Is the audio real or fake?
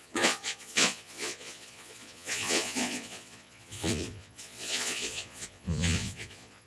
fake